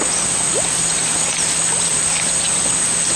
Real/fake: real